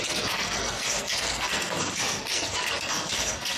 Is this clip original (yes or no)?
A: no